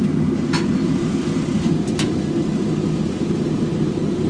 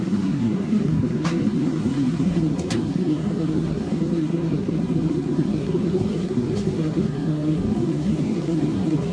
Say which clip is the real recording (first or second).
first